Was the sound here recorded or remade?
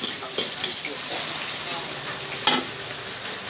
recorded